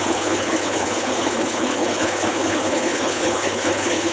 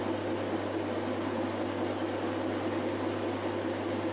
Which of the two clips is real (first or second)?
second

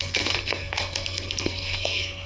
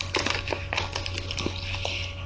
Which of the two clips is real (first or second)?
second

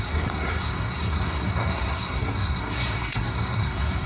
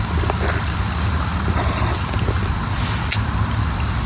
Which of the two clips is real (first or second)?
second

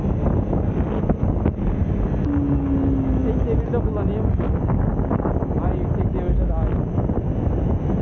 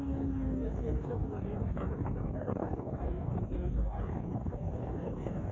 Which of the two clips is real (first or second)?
first